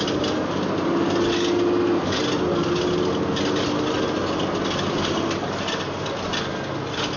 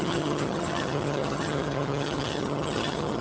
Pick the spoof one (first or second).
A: second